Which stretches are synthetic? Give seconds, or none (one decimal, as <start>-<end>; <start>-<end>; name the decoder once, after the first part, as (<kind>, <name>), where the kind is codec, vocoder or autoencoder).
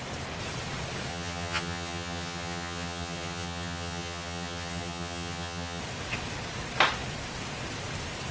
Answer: 1.1-5.8 (vocoder, HiFi-GAN)